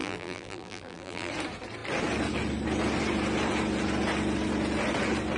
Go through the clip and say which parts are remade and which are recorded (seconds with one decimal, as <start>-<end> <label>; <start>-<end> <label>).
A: 0.0-1.3 remade; 1.3-5.4 recorded